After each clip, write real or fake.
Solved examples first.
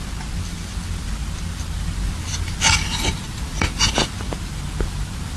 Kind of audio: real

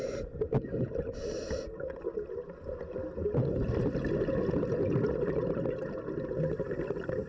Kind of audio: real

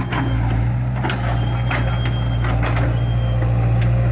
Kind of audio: real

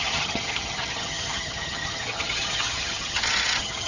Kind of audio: fake